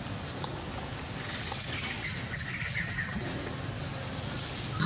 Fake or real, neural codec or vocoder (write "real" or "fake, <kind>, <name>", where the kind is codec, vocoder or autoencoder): real